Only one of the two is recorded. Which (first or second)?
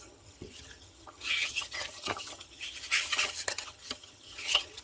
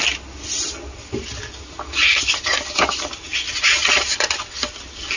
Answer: second